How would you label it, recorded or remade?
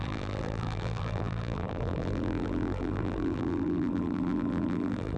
remade